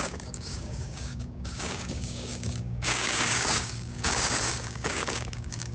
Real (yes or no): no